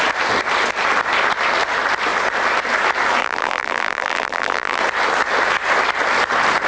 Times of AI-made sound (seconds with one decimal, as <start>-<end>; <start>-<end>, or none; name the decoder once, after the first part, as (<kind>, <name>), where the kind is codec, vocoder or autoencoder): 3.2-4.8 (vocoder, BigVGAN v2)